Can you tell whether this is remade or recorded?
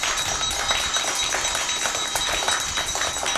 recorded